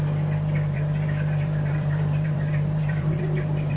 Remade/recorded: remade